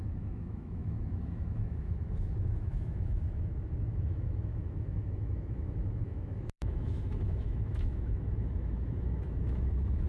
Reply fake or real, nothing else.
fake